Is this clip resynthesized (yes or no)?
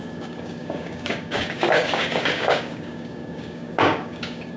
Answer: yes